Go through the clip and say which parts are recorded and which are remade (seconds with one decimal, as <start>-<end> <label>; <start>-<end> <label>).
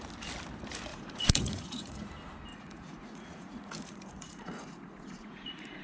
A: 0.0-0.9 recorded; 0.9-2.1 remade; 2.1-2.5 recorded; 2.5-5.8 remade